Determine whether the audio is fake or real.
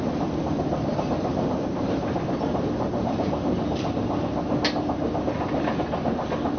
real